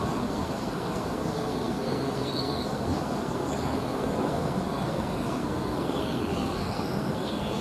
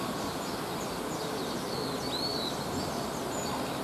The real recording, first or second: second